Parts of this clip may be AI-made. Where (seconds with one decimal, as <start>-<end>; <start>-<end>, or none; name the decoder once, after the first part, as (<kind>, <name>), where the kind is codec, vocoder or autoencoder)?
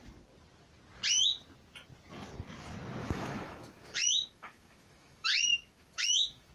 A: 3.0-6.5 (autoencoder, DAC-VAE)